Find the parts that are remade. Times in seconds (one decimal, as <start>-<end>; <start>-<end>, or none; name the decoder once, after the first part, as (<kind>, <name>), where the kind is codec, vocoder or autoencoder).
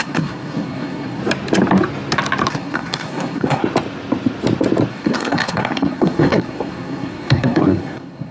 0.0-1.2 (codec, SNAC); 2.5-3.6; 4.9-8.3